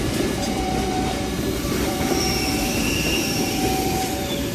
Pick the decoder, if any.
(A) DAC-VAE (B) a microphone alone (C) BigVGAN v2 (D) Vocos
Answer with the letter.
C